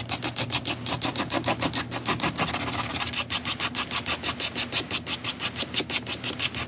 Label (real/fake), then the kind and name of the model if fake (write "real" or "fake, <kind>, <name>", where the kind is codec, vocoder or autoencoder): real